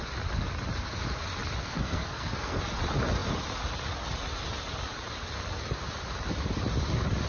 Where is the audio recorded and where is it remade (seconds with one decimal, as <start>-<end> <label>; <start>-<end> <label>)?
0.0-1.6 recorded; 1.6-2.6 remade; 2.6-7.3 recorded